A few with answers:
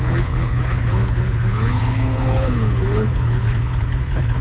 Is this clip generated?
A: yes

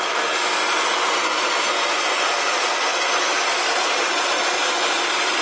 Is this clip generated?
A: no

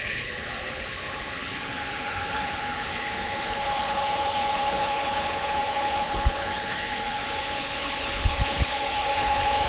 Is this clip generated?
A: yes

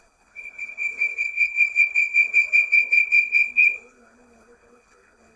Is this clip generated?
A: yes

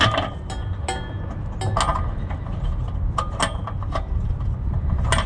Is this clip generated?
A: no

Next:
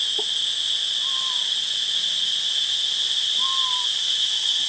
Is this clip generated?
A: no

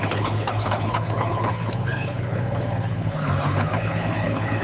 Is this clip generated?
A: yes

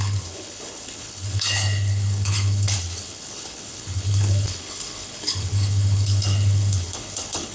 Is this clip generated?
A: yes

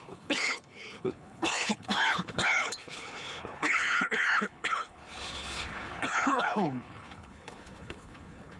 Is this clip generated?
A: yes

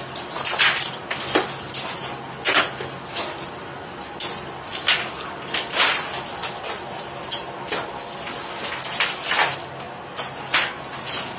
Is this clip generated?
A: no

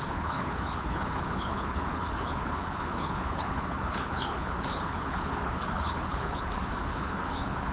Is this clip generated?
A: yes